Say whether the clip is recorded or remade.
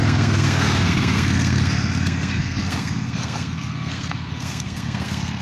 remade